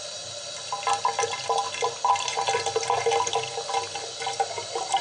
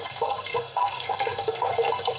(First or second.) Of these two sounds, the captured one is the first